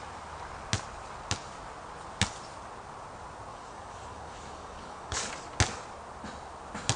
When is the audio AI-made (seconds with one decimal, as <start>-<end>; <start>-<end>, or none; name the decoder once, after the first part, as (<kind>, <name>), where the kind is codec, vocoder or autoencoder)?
3.5-5.3 (codec, DAC)